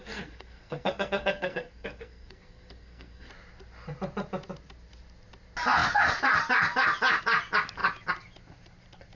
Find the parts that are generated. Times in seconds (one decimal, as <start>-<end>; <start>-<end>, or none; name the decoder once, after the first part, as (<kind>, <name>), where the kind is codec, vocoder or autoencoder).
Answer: 0.0-3.3 (codec, SNAC)